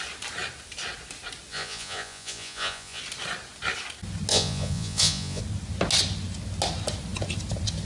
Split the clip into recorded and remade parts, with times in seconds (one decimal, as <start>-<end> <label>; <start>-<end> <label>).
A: 0.0-1.5 recorded; 1.5-3.0 remade; 3.0-4.3 recorded; 4.3-5.4 remade; 5.4-7.9 recorded